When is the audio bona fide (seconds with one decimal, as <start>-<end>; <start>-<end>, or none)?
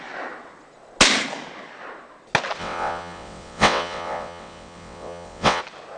0.0-2.6; 5.6-6.0